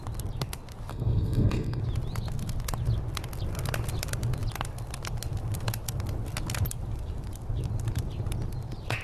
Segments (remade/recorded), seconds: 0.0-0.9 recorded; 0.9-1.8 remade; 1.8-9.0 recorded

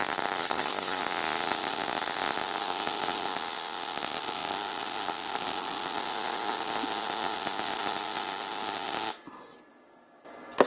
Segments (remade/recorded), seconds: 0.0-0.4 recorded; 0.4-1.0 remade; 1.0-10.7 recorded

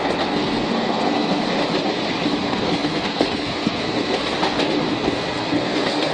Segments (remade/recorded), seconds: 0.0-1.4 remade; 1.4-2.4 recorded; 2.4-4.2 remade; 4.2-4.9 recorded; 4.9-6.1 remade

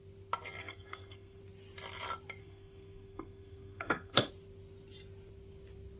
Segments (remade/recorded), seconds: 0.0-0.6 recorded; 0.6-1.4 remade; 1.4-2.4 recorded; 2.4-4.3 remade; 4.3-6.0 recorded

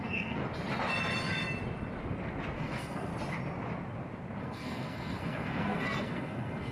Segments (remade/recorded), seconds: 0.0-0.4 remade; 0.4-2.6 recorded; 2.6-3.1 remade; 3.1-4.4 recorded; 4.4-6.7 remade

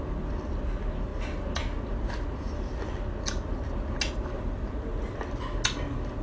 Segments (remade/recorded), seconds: 0.0-6.2 recorded